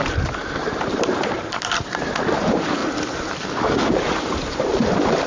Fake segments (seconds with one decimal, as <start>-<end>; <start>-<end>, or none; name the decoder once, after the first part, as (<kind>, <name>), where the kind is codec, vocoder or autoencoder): 0.0-2.8 (vocoder, BigVGAN v2); 3.9-5.3